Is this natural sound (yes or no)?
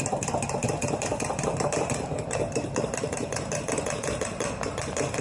no